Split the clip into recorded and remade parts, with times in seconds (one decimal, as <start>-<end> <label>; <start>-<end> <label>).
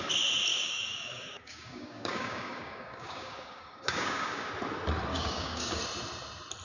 0.0-0.5 recorded; 0.5-4.5 remade; 4.5-5.1 recorded; 5.1-5.8 remade; 5.8-6.6 recorded